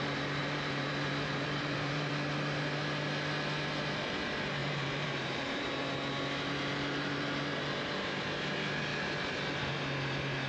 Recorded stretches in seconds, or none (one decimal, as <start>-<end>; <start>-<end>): 0.0-0.4; 2.1-4.6; 6.1-10.5